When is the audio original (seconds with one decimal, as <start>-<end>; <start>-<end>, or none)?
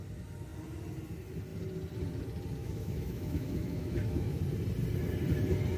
0.0-2.6; 4.4-5.8